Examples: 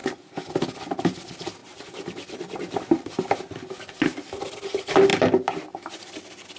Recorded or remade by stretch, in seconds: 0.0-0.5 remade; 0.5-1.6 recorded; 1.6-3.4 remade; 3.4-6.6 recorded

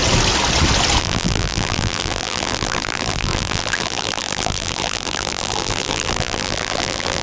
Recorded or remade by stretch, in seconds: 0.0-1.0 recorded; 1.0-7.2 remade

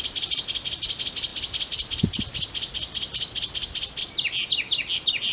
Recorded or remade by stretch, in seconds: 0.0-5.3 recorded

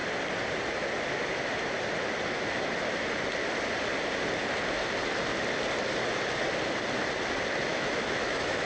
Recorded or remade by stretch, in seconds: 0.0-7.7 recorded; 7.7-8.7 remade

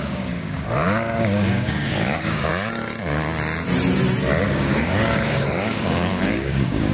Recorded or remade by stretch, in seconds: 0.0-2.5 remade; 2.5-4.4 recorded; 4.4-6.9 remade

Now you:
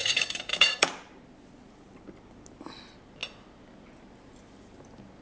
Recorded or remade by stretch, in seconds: 0.0-0.9 remade; 0.9-5.2 recorded